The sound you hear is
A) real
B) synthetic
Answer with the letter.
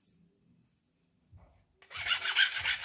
A